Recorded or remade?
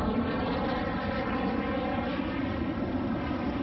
recorded